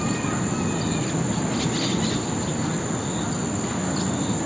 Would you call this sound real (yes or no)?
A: yes